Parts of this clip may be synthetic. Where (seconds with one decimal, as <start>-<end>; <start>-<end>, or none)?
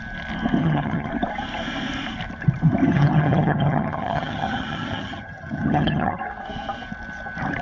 0.6-1.1; 2.8-6.2